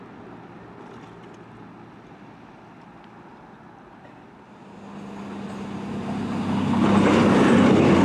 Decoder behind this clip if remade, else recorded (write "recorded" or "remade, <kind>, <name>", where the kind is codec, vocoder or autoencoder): recorded